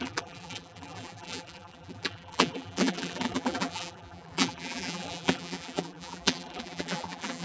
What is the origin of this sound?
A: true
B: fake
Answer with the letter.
B